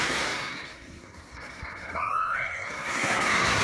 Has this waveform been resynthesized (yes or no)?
yes